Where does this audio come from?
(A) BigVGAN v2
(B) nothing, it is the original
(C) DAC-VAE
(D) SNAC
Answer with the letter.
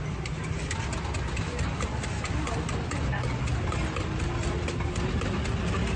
B